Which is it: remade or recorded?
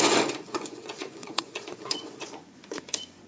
remade